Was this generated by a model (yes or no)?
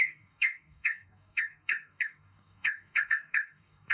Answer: yes